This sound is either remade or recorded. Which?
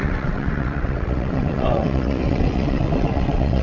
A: remade